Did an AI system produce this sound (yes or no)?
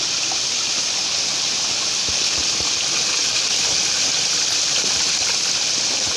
no